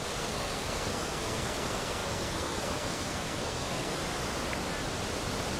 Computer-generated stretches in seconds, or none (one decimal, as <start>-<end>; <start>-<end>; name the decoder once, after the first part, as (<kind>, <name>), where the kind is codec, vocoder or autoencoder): 0.0-4.0 (codec, SNAC)